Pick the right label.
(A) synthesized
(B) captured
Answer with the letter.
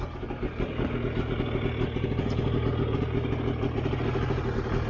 B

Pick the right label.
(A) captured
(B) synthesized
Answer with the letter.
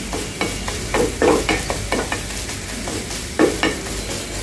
A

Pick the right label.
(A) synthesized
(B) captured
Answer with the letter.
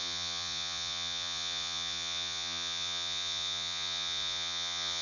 A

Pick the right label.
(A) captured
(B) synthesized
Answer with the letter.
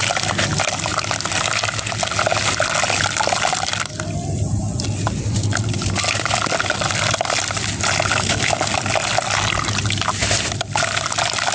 A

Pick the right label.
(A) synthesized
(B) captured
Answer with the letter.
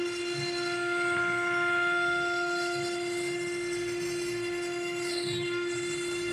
B